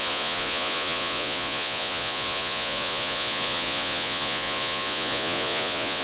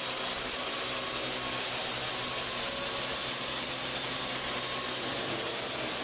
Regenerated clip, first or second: first